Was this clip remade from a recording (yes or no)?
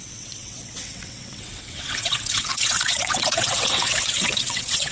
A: yes